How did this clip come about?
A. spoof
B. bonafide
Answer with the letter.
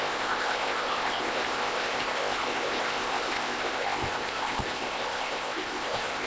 A